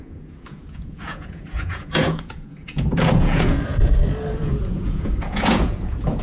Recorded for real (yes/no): no